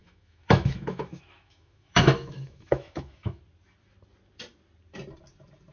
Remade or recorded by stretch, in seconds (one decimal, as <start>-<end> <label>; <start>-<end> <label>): 0.0-3.4 remade; 3.4-5.7 recorded